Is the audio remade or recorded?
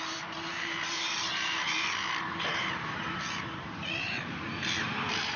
remade